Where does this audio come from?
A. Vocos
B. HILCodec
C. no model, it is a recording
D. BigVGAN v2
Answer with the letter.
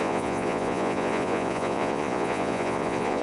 A